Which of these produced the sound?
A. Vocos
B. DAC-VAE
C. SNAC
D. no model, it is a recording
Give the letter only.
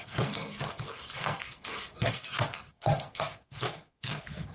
C